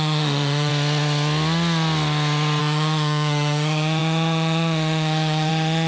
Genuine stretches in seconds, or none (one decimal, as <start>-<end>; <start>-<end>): 0.7-2.6